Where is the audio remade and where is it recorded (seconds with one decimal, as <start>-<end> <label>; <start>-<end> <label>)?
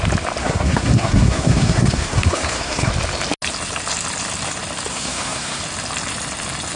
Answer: 0.0-0.4 recorded; 0.4-2.9 remade; 2.9-4.9 recorded; 4.9-5.6 remade; 5.6-6.8 recorded